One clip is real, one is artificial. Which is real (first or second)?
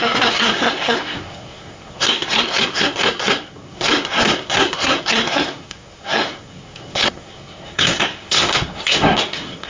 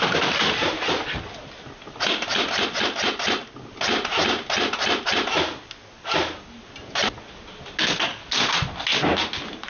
second